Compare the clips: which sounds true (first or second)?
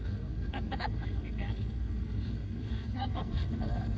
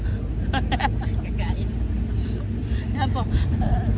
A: second